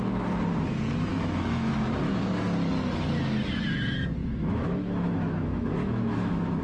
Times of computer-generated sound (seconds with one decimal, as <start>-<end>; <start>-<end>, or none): 1.1-2.3; 4.2-6.6